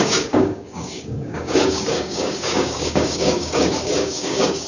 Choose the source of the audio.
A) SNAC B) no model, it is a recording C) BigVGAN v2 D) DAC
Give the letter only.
D